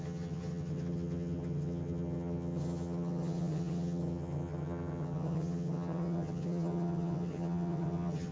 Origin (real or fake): fake